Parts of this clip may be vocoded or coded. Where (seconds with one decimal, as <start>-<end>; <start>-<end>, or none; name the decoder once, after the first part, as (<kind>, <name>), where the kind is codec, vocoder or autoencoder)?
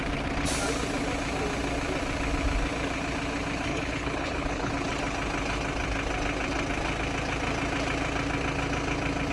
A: 3.7-4.7 (codec, HILCodec)